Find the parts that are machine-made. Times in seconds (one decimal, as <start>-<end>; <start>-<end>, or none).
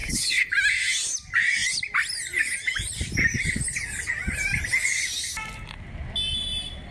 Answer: 0.0-0.5